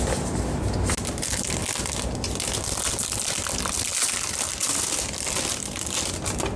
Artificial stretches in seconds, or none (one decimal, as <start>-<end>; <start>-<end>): none

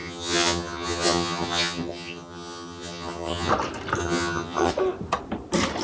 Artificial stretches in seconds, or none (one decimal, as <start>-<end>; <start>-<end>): 0.0-3.5; 4.0-4.7

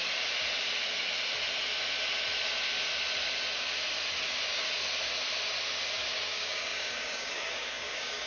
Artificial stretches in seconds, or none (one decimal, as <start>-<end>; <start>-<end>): 4.3-4.8; 6.1-8.3

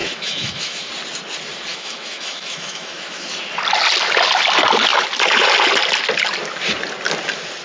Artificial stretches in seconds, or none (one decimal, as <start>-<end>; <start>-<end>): 0.0-0.9; 1.7-3.3

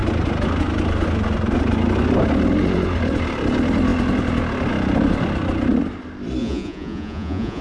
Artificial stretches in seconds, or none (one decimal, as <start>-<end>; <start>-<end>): 6.4-7.6

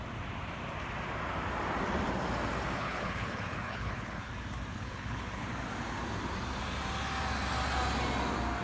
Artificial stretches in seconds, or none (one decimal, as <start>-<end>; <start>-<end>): 2.8-4.3; 4.7-5.5

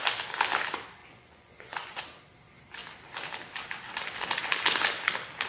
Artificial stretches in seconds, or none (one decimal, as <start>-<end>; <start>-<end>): 1.0-2.0

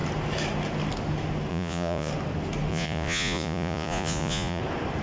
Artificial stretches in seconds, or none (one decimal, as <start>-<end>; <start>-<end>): 1.5-2.1; 2.7-4.6